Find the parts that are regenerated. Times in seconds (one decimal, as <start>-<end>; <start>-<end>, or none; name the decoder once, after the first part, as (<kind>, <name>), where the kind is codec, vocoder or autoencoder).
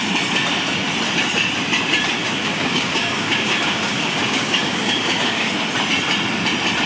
2.2-5.5 (codec, DAC)